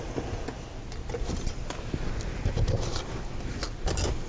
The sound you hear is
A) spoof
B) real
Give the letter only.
B